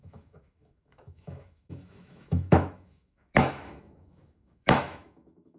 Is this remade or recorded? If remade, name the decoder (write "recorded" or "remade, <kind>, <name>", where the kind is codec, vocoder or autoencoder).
remade, autoencoder, DAC-VAE